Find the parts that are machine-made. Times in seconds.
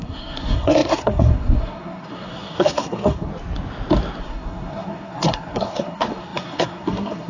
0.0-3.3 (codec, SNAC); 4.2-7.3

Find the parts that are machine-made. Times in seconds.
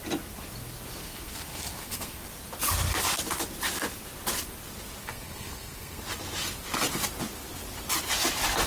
1.0-2.2 (codec, SNAC); 5.0-6.0